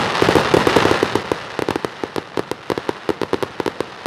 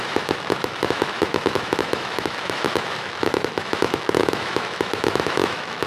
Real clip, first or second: first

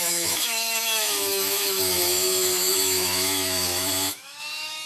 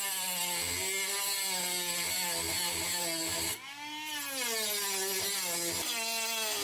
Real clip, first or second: second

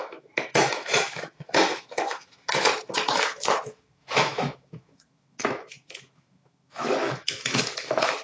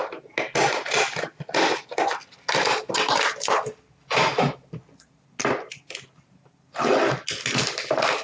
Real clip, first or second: second